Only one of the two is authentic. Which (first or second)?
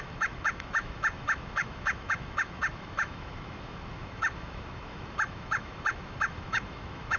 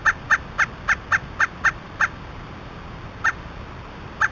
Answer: second